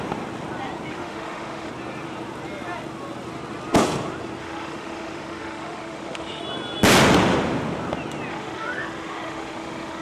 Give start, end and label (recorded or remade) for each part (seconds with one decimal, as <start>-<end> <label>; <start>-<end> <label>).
0.0-0.9 recorded; 0.9-1.7 remade; 1.7-4.4 recorded; 4.4-6.4 remade; 6.4-8.3 recorded; 8.3-10.0 remade